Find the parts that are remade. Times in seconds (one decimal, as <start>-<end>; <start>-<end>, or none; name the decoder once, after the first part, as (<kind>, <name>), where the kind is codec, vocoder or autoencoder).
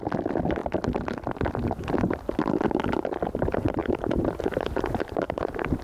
3.8-5.8 (vocoder, BigVGAN v2)